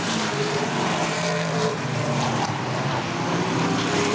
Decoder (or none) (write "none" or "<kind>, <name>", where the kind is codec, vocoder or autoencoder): vocoder, BigVGAN v2